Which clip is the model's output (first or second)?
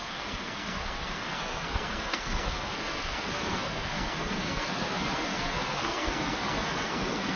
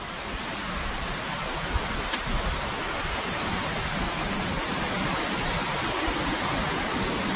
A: first